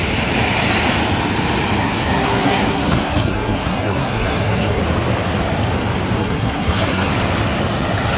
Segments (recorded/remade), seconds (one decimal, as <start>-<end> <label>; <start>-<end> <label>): 0.0-1.8 recorded; 1.8-4.8 remade; 4.8-6.2 recorded; 6.2-7.1 remade; 7.1-8.2 recorded

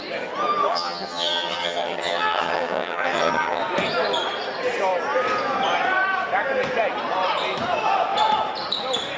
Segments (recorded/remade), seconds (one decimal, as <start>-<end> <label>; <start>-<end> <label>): 0.0-0.7 recorded; 0.7-3.6 remade; 3.6-9.2 recorded

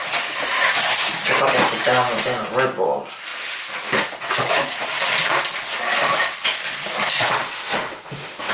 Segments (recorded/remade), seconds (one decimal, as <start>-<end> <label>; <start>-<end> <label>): 0.0-7.4 recorded; 7.4-8.5 remade

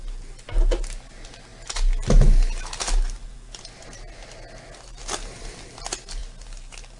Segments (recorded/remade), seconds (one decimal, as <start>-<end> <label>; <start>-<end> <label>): 0.0-7.0 recorded

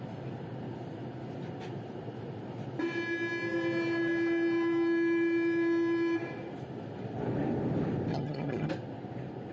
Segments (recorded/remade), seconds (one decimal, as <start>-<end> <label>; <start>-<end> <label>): 0.0-8.1 recorded; 8.1-8.7 remade; 8.7-9.5 recorded